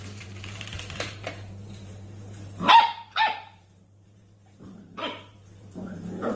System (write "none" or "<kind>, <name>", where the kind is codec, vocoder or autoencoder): vocoder, BigVGAN v2